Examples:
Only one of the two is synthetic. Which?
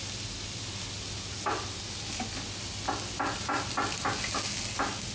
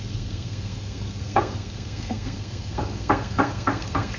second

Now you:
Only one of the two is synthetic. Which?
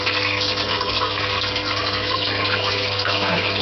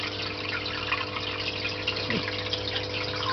first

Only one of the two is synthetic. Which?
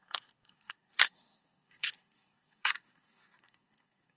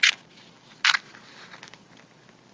first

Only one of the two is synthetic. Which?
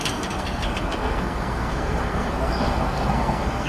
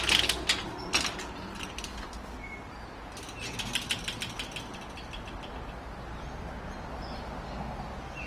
first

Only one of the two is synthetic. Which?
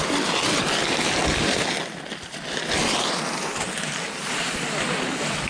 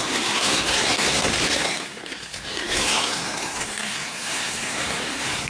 second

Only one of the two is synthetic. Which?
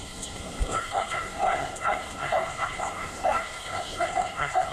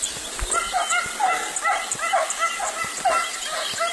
first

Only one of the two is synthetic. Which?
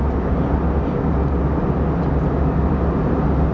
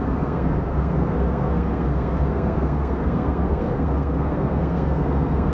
second